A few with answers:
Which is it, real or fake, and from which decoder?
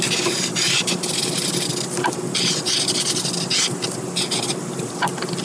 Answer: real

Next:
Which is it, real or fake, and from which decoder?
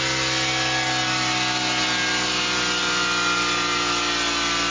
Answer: real